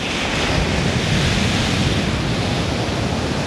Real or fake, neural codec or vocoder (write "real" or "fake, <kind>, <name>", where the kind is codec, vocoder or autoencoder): real